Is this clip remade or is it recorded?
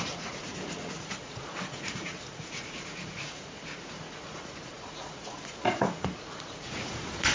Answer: remade